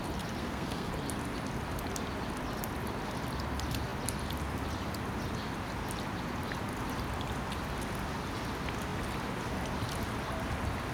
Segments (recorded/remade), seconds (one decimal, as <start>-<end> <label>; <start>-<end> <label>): 0.0-0.4 recorded; 0.4-0.9 remade; 0.9-10.9 recorded